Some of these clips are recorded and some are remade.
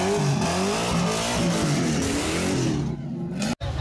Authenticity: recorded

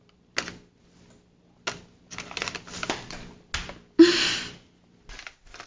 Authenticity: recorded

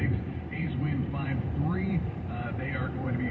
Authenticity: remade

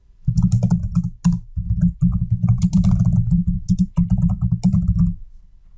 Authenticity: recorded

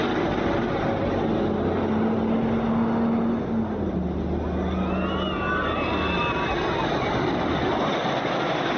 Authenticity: recorded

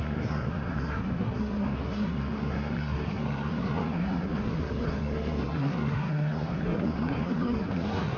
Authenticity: remade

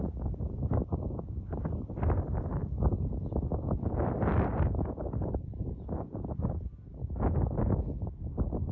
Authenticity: recorded